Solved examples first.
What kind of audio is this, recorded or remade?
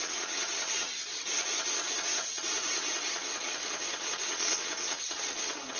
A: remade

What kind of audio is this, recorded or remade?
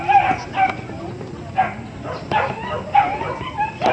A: recorded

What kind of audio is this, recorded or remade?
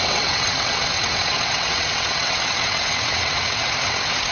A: remade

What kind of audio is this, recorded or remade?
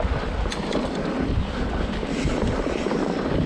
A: recorded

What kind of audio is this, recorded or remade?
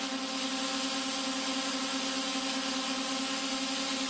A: recorded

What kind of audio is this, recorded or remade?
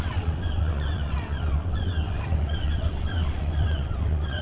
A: remade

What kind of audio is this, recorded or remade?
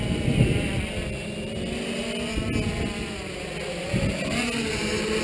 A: recorded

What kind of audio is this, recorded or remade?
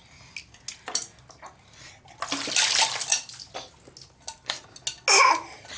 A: recorded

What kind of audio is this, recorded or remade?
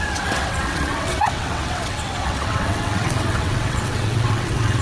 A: remade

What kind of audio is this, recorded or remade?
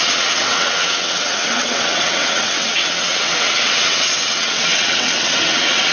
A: remade